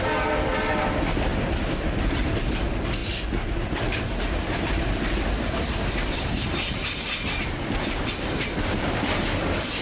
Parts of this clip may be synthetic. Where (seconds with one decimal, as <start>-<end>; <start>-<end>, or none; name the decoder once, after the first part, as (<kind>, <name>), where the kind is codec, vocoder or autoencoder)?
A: none